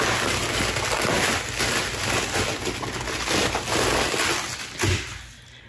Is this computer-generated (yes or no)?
no